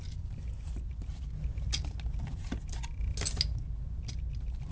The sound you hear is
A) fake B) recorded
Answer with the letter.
B